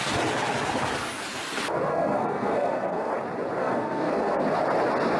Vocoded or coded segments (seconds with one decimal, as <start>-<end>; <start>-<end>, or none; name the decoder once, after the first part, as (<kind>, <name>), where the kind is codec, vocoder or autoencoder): 1.9-3.1 (codec, SNAC); 3.6-4.4